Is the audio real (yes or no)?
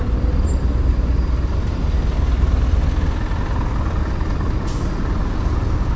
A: yes